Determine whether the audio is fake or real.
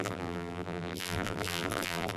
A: fake